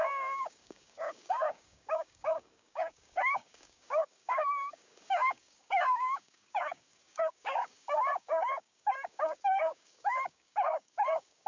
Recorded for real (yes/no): no